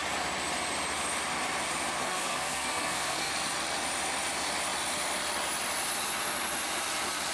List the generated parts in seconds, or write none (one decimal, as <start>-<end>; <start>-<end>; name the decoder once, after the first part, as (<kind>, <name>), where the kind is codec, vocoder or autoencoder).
2.0-3.3 (codec, SNAC)